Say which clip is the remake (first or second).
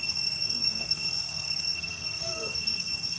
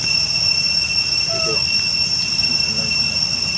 first